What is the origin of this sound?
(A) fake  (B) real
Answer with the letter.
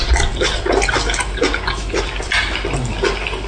B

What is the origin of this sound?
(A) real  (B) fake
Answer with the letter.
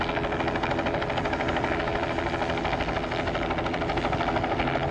A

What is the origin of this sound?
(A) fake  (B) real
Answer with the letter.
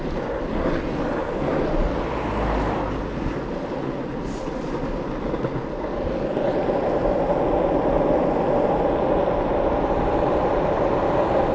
B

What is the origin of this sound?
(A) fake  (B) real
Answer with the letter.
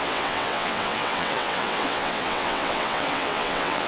A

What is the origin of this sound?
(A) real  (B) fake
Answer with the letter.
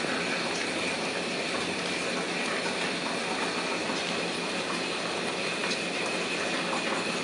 A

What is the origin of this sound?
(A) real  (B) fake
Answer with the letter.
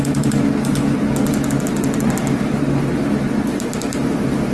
A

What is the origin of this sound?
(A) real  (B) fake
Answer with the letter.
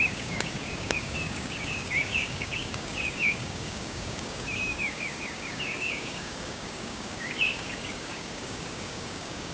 B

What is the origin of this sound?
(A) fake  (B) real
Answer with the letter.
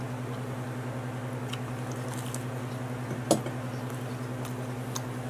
B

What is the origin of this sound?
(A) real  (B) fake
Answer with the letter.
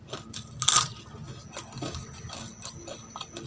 A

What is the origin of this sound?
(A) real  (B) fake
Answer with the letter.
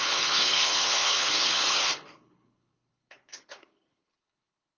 B